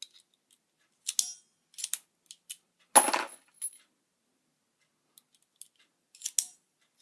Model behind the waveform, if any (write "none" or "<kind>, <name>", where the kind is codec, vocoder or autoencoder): none